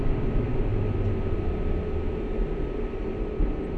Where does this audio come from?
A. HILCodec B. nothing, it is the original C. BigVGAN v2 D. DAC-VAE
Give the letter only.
B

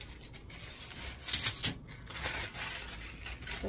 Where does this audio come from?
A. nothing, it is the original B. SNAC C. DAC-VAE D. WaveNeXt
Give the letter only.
A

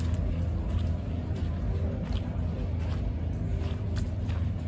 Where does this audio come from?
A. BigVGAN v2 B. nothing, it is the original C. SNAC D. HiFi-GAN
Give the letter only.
B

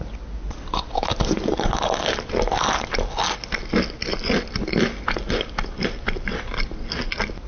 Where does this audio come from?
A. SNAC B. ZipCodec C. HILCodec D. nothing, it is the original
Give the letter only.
D